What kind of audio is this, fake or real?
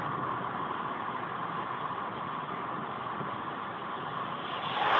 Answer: real